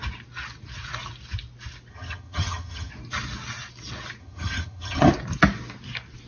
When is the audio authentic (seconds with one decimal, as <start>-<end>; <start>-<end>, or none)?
0.0-1.9; 2.9-4.2; 5.1-6.3

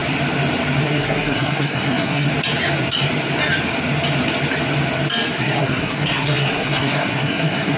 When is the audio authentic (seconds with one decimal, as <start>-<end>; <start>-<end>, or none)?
0.0-0.8; 2.3-5.4

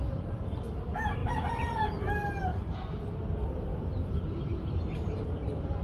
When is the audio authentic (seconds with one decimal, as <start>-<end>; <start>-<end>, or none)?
0.0-1.2; 2.1-5.8

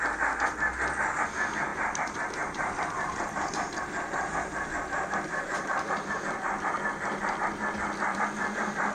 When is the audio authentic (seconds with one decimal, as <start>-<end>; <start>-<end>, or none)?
0.0-1.7; 6.2-8.9

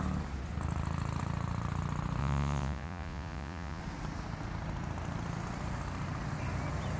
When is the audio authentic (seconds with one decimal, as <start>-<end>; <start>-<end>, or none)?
0.0-2.2; 3.8-7.0

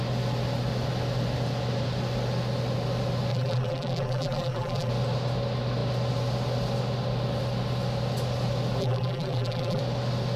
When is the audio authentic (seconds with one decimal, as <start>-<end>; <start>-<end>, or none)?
0.0-3.3; 4.9-8.8; 9.8-10.4